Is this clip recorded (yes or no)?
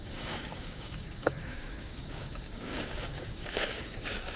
no